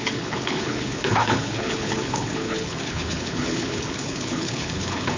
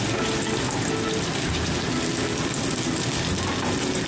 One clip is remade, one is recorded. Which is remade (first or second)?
first